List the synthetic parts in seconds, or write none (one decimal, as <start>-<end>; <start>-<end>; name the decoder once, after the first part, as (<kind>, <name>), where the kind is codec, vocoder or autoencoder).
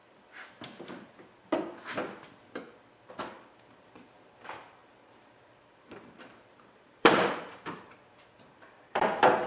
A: 3.1-9.5 (vocoder, BigVGAN v2)